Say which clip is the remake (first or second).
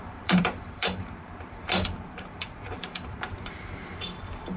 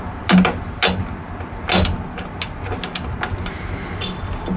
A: first